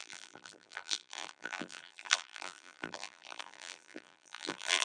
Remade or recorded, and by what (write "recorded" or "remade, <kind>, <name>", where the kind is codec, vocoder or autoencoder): remade, vocoder, BigVGAN v2